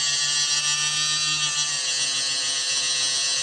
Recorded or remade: recorded